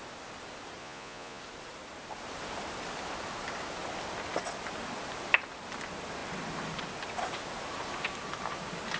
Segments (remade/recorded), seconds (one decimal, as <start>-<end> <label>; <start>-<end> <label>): 0.0-0.8 recorded; 0.8-1.4 remade; 1.4-9.0 recorded